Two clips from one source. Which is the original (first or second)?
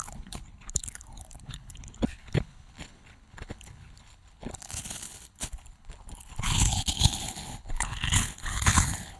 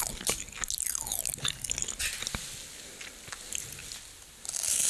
second